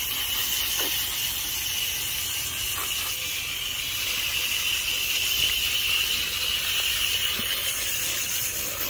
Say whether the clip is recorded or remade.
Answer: recorded